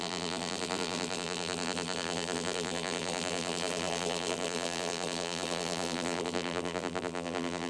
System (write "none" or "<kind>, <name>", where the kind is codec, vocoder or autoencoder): vocoder, BigVGAN v2